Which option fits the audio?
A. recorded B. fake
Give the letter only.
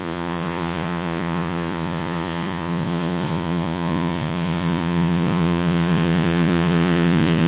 B